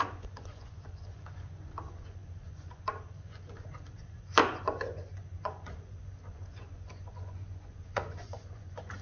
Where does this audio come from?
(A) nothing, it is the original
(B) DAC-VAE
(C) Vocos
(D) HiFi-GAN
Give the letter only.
C